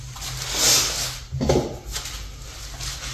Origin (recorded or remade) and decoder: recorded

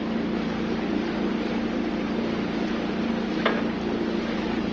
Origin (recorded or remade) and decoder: recorded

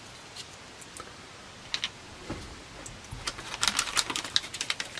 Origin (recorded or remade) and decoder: recorded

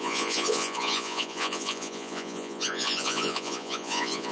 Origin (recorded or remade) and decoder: remade, vocoder, Vocos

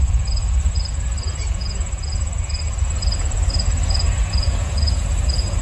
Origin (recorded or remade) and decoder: remade, vocoder, Vocos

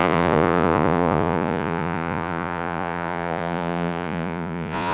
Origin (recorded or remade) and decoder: remade, vocoder, Vocos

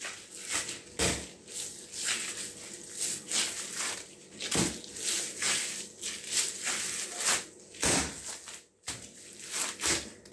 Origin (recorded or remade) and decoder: recorded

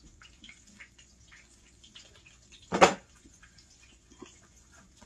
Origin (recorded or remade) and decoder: remade, vocoder, Vocos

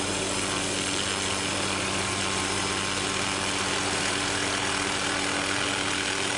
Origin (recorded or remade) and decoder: recorded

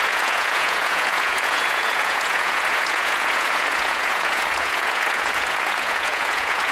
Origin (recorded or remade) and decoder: remade, vocoder, Vocos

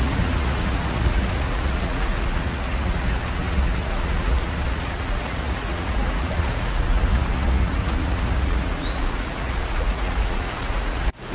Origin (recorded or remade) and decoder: remade, vocoder, Vocos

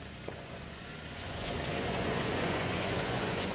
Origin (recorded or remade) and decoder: remade, vocoder, Vocos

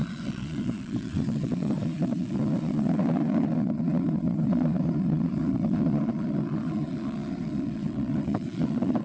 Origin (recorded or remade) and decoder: remade, vocoder, Vocos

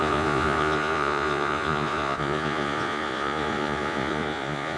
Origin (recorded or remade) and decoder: remade, vocoder, Vocos